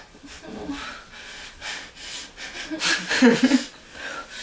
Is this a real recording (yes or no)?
yes